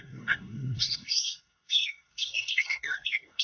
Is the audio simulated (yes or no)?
yes